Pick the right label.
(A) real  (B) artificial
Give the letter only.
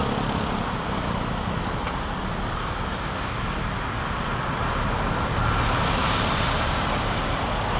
B